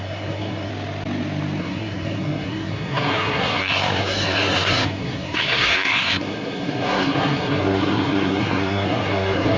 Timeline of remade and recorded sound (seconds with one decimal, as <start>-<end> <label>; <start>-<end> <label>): 0.0-0.7 remade; 0.7-1.6 recorded; 1.6-9.6 remade